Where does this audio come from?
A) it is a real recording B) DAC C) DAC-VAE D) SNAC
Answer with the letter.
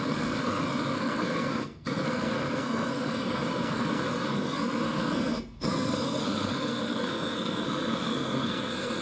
D